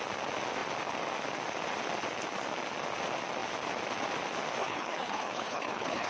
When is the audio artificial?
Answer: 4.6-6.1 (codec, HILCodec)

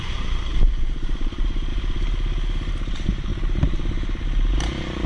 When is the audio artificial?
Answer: 0.0-1.7 (vocoder, BigVGAN v2); 2.7-3.3; 4.5-5.1

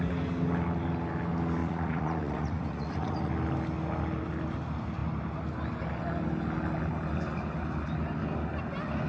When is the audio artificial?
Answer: 1.6-3.3 (vocoder, Vocos)

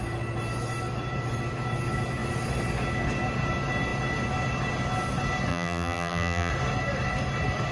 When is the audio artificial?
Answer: 5.5-6.5 (vocoder, BigVGAN v2)

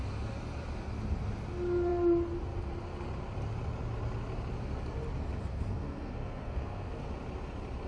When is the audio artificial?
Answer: 5.5-7.1 (codec, SNAC)

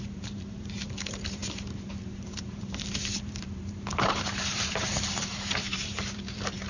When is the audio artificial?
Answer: 0.0-6.7 (vocoder, BigVGAN v2)

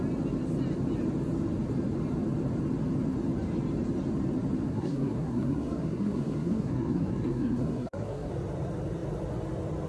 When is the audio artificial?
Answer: 4.7-8.3 (codec, SNAC)